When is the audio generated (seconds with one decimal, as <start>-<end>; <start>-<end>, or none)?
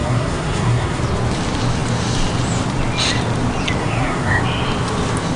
0.0-1.0; 3.8-4.4